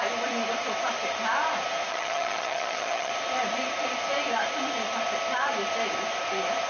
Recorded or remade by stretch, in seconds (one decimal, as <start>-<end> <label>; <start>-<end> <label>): 0.0-1.9 recorded; 1.9-3.1 remade; 3.1-6.7 recorded